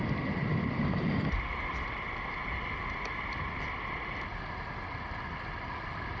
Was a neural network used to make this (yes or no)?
yes